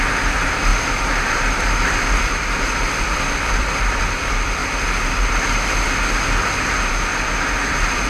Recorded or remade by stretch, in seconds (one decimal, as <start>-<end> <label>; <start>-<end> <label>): 0.0-4.6 remade; 4.6-8.1 recorded